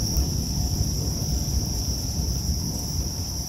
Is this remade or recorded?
remade